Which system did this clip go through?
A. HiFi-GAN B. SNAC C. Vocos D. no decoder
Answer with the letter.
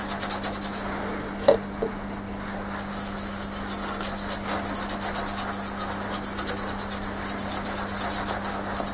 D